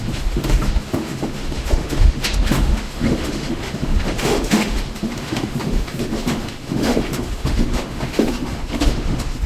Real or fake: fake